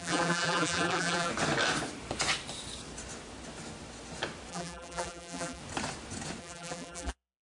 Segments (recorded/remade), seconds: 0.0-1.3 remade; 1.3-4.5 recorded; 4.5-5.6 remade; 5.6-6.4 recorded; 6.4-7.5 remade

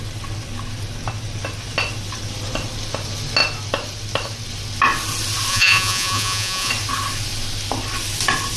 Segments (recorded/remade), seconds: 0.0-5.5 recorded; 5.5-6.7 remade; 6.7-8.6 recorded

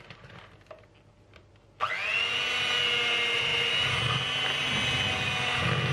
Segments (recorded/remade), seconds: 0.0-5.9 recorded

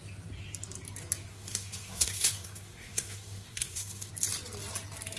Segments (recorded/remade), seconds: 0.0-1.3 recorded; 1.3-4.1 remade; 4.1-5.2 recorded

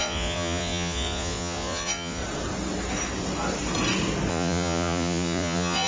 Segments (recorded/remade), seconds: 0.0-2.2 remade; 2.2-4.3 recorded; 4.3-5.9 remade

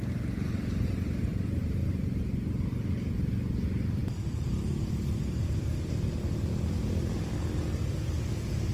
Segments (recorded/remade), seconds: 0.0-8.7 recorded

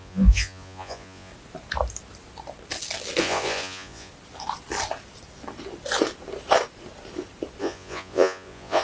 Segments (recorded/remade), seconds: 0.0-1.3 remade; 1.3-3.2 recorded; 3.2-4.1 remade; 4.1-7.6 recorded; 7.6-8.8 remade

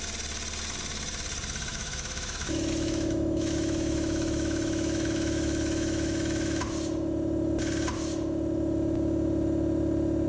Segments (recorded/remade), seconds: 0.0-1.7 recorded; 1.7-6.6 remade; 6.6-10.3 recorded